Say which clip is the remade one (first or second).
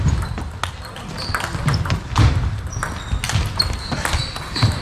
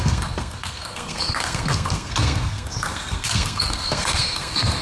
second